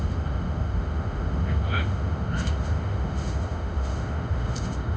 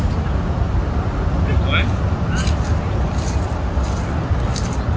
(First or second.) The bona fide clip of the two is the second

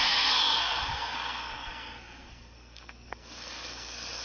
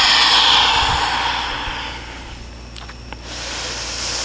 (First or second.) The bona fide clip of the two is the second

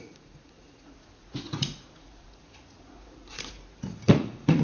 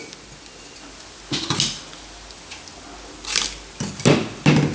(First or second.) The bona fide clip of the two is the second